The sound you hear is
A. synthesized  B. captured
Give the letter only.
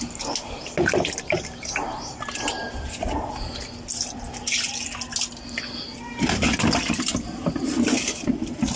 B